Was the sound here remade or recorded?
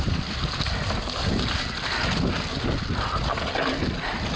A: recorded